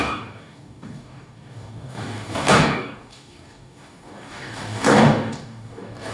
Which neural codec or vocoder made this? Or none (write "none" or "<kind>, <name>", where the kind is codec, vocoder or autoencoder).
codec, DAC